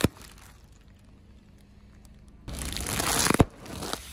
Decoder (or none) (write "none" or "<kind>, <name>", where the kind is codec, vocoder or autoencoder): none